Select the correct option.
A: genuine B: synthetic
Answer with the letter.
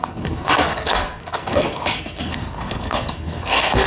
B